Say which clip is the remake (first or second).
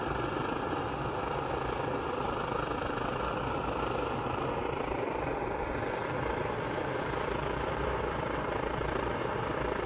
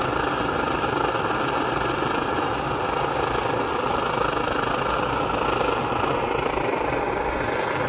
first